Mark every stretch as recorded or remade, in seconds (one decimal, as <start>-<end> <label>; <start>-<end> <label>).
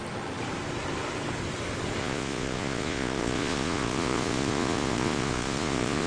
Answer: 0.0-2.0 recorded; 2.0-6.1 remade